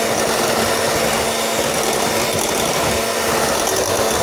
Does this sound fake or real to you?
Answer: real